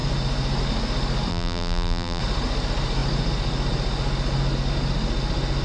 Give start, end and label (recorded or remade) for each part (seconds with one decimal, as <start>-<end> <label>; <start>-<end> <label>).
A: 0.0-1.3 recorded; 1.3-2.2 remade; 2.2-5.6 recorded